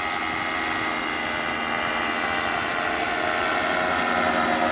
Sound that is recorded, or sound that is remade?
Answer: recorded